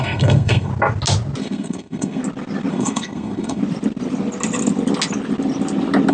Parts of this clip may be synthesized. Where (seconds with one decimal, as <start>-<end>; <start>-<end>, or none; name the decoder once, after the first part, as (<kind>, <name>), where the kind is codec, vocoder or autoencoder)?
0.0-0.7 (codec, SNAC); 1.4-2.2; 2.7-3.6